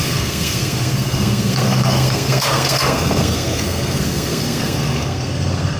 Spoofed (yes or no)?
yes